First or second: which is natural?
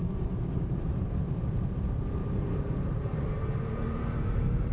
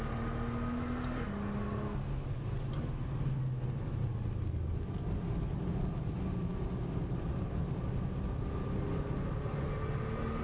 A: second